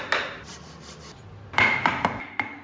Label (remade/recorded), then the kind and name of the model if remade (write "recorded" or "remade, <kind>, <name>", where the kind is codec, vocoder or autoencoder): recorded